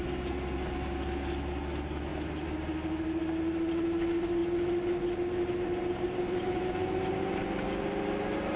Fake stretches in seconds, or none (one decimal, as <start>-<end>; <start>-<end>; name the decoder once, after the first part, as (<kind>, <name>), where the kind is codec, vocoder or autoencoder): none